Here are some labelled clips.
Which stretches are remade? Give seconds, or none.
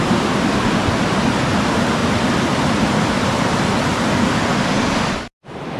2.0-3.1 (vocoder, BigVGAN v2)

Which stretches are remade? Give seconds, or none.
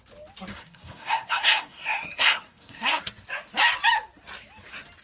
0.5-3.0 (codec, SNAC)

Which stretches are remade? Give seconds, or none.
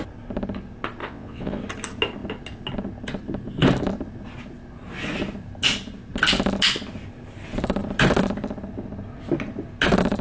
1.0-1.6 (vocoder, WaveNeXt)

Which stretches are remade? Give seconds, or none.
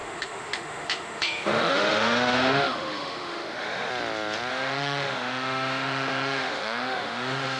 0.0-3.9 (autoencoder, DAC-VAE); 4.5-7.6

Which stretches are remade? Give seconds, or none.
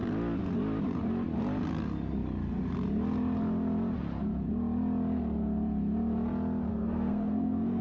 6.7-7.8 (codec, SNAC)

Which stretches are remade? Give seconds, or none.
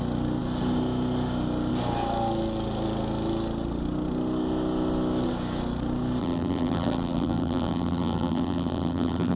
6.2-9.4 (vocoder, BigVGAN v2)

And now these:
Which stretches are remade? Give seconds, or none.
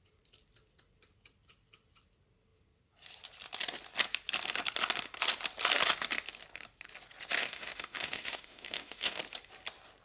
7.4-9.2 (autoencoder, DAC-VAE)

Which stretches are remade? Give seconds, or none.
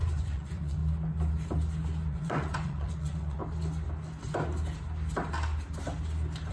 0.0-0.8 (vocoder, Vocos); 2.1-3.4